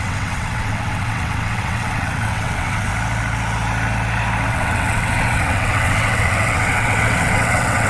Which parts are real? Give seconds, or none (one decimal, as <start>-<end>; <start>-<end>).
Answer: 2.9-4.5